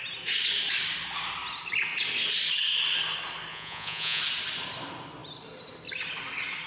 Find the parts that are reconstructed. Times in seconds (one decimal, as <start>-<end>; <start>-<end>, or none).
3.5-4.2